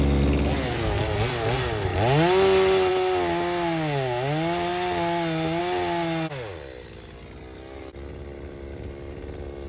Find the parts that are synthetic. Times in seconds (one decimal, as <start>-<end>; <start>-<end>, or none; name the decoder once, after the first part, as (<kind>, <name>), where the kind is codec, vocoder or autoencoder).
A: none